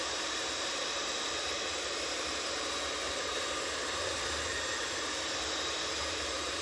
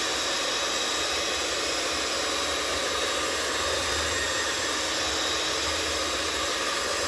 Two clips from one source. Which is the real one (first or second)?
second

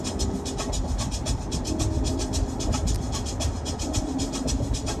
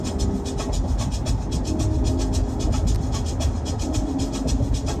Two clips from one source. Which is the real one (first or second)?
second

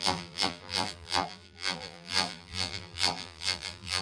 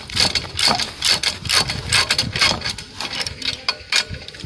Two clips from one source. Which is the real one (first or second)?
second